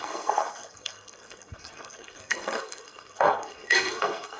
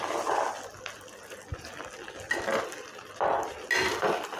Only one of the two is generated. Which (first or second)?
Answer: first